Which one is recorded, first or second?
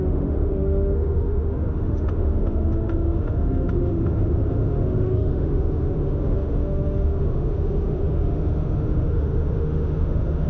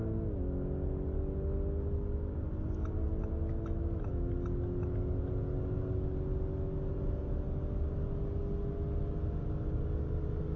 second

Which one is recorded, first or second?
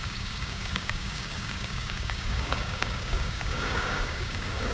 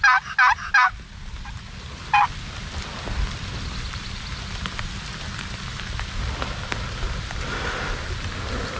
second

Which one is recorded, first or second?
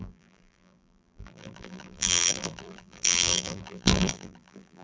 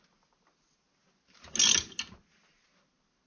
second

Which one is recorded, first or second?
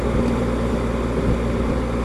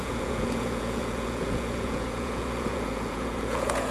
first